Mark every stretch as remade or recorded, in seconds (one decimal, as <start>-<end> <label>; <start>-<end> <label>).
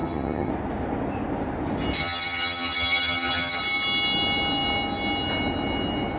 0.0-0.5 remade; 0.5-2.0 recorded; 2.0-3.6 remade; 3.6-6.2 recorded